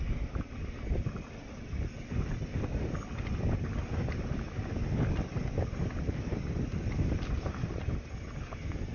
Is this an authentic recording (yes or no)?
yes